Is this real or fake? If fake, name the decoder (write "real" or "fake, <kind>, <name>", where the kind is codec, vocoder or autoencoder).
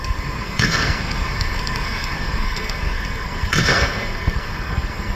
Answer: fake, codec, SNAC